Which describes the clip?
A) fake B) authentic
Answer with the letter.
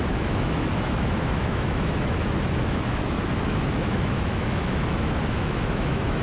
A